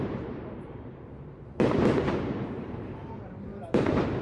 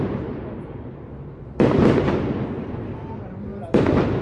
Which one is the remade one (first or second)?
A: first